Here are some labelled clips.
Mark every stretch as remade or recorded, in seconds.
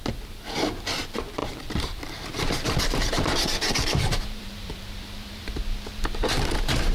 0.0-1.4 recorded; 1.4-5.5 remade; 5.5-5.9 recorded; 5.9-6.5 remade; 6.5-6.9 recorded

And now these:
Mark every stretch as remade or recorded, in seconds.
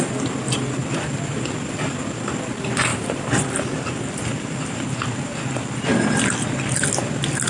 0.0-2.9 recorded; 2.9-5.4 remade; 5.4-7.5 recorded